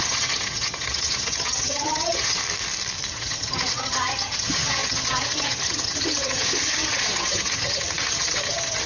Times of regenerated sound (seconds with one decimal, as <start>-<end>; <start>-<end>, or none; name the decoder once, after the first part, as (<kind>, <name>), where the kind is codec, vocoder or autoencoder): 0.0-2.4 (vocoder, HiFi-GAN); 3.1-8.9